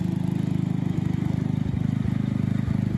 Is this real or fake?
real